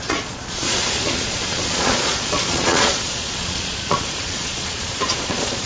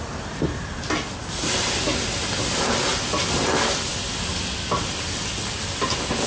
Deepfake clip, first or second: first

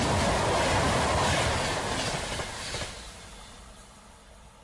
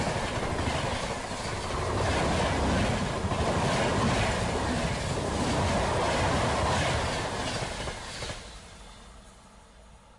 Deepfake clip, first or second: first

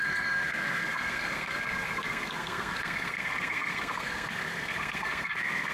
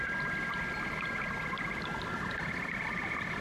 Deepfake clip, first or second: first